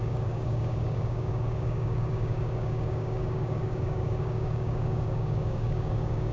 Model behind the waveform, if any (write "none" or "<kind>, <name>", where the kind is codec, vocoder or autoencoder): codec, DAC